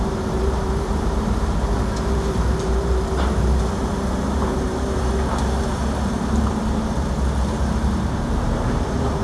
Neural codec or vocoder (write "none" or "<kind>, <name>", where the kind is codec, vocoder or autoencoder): vocoder, BigVGAN v2